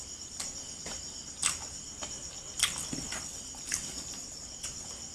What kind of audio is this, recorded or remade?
recorded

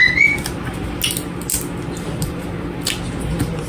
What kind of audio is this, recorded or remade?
recorded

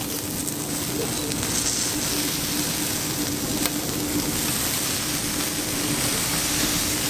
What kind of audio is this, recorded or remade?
recorded